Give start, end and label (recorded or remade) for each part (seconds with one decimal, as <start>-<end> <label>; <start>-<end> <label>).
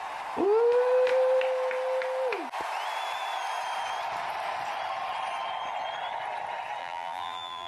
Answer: 0.0-6.8 recorded; 6.8-7.7 remade